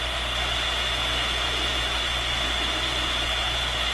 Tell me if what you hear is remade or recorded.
recorded